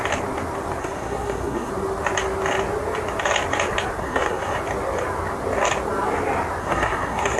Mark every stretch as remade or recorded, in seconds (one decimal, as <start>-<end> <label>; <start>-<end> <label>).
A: 0.0-0.8 recorded; 0.8-1.7 remade; 1.7-4.0 recorded; 4.0-4.6 remade; 4.6-6.6 recorded; 6.6-7.4 remade